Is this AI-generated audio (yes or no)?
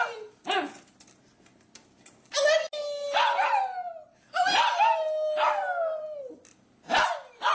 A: no